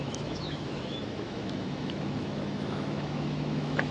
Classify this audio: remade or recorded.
remade